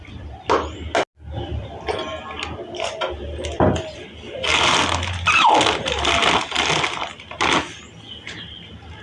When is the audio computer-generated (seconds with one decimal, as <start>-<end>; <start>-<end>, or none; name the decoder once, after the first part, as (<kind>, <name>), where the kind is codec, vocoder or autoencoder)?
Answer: none